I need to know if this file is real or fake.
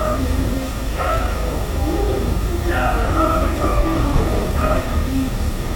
fake